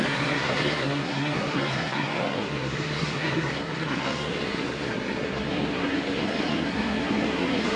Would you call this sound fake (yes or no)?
yes